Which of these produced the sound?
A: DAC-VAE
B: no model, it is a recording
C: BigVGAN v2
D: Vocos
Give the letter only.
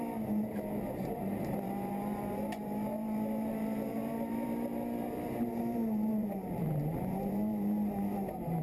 C